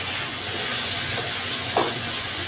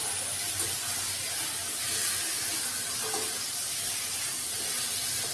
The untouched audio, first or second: second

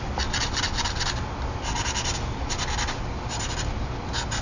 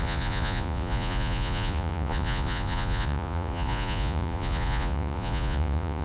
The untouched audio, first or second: first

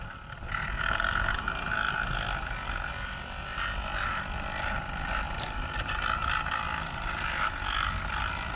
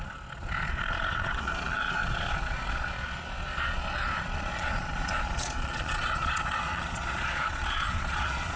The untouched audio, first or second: first